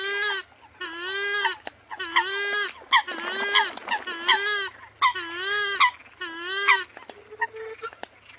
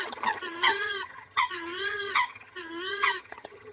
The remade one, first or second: second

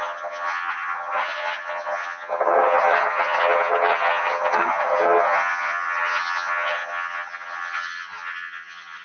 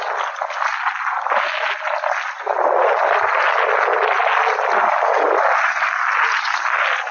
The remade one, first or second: first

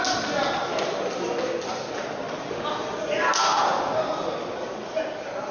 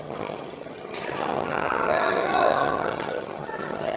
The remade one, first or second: second